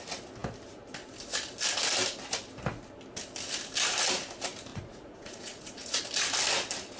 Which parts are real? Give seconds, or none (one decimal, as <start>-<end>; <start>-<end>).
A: 0.0-4.7; 6.0-7.0